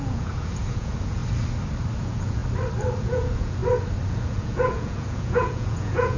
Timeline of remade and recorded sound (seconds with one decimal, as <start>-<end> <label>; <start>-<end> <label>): 0.0-1.2 remade; 1.2-2.0 recorded; 2.0-2.4 remade; 2.4-3.0 recorded; 3.0-3.6 remade; 3.6-4.1 recorded; 4.1-6.2 remade